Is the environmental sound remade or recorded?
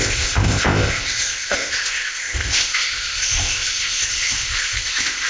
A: remade